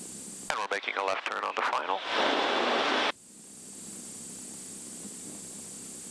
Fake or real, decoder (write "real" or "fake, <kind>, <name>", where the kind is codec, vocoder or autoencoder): real